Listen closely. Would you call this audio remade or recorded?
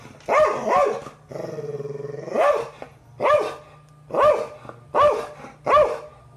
recorded